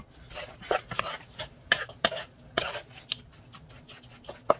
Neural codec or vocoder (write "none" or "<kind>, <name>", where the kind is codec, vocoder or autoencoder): none